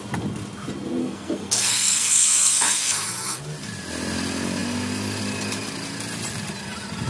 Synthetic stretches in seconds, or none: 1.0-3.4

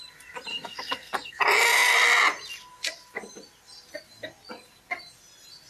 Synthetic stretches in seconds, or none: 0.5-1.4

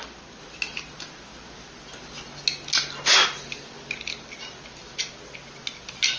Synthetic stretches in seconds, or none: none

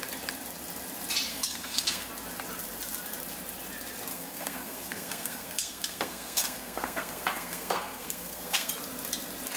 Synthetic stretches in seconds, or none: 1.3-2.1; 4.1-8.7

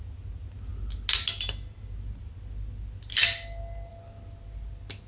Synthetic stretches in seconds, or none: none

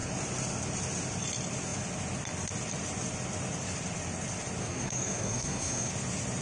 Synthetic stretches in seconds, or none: 4.6-5.9

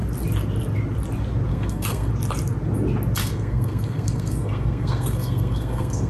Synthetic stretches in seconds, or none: 1.5-2.1; 3.2-6.1